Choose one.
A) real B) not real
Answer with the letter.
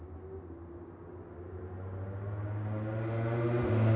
A